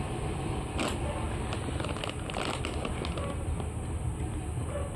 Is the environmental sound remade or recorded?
recorded